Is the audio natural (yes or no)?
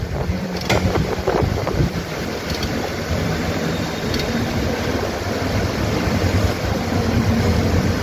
no